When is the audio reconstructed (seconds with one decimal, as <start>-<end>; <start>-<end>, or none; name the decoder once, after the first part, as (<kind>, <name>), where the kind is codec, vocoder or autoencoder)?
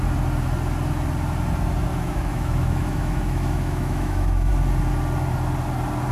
1.9-4.5 (autoencoder, DAC-VAE)